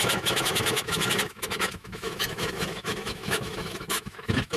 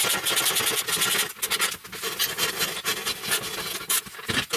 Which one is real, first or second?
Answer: second